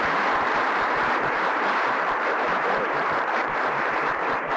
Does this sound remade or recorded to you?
remade